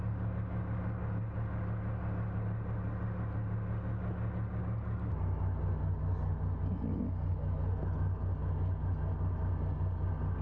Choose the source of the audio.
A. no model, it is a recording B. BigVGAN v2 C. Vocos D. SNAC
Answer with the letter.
A